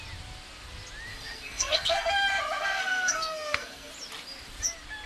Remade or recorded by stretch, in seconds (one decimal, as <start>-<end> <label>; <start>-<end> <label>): 0.0-1.1 recorded; 1.1-2.1 remade; 2.1-2.6 recorded; 2.6-3.9 remade; 3.9-5.1 recorded